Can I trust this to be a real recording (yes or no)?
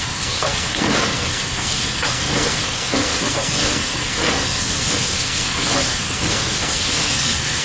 no